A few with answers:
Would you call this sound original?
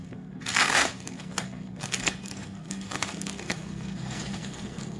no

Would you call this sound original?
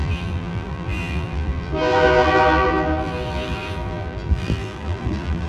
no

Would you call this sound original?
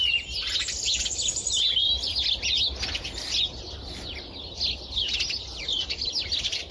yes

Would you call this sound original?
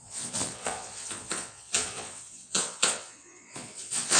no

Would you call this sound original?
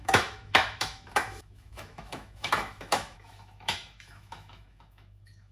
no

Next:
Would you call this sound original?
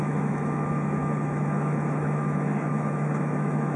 no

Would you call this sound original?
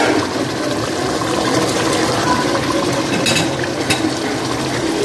yes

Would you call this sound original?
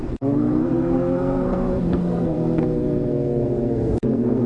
no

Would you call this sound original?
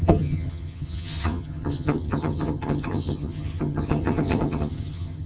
no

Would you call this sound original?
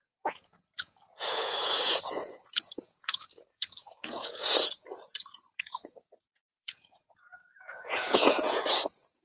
no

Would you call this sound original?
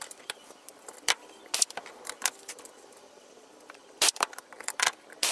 no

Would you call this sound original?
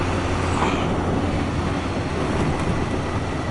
yes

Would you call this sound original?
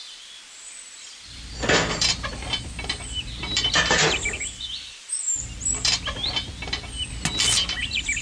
yes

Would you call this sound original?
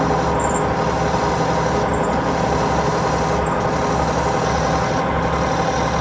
yes